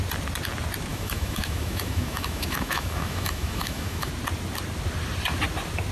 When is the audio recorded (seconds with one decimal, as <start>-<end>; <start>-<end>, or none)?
0.0-0.9; 4.1-5.9